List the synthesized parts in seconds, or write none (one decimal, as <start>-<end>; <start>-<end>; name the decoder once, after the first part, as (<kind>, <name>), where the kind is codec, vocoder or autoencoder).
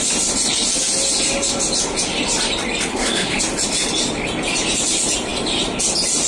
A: 2.9-3.4 (codec, SNAC)